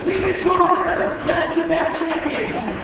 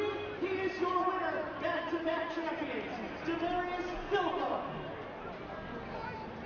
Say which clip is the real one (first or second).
second